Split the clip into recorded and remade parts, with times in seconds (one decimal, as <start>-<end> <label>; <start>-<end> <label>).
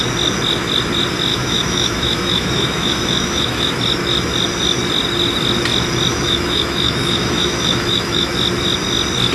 0.0-1.3 recorded; 1.3-3.7 remade; 3.7-6.1 recorded; 6.1-8.3 remade; 8.3-9.3 recorded